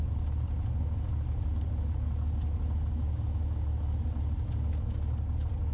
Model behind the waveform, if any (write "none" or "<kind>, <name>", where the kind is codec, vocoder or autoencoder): none